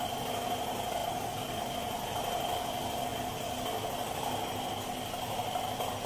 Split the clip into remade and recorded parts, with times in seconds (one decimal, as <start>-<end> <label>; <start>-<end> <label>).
0.0-6.1 recorded